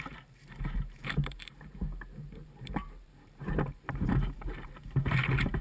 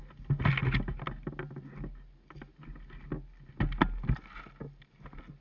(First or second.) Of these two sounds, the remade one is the first